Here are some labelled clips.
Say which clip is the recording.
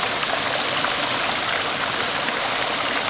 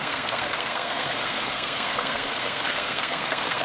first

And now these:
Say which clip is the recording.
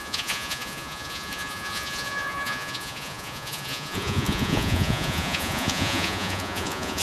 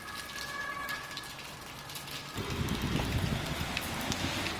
second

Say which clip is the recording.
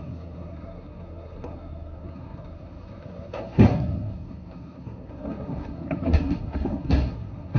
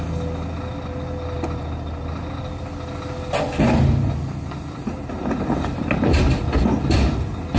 second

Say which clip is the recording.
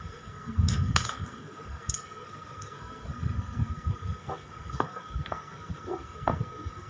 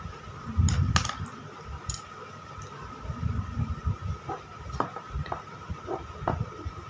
second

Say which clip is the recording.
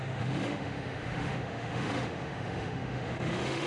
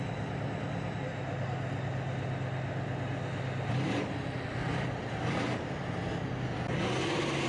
second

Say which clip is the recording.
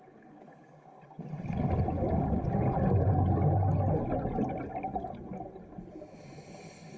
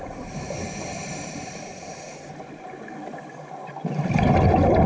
first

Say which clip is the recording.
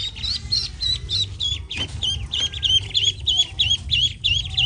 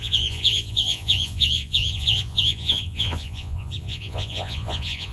first